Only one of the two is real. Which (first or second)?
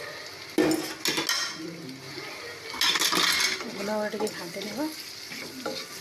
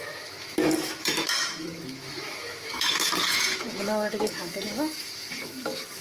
first